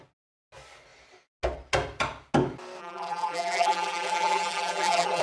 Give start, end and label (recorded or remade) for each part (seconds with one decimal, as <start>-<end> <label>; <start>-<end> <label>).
0.0-2.8 recorded; 2.8-5.2 remade